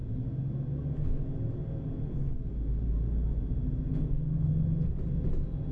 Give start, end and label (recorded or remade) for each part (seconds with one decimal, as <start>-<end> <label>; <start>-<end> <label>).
0.0-3.9 recorded; 3.9-4.5 remade; 4.5-5.7 recorded

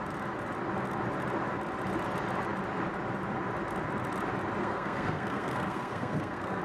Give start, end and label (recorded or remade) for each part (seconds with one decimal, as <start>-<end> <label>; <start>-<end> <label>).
0.0-4.6 recorded; 4.6-6.6 remade